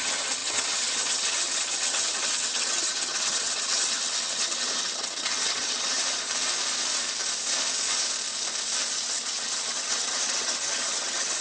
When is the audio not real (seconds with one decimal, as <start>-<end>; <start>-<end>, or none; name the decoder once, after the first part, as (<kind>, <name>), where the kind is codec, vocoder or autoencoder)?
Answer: 0.0-6.0 (vocoder, HiFi-GAN); 8.9-11.4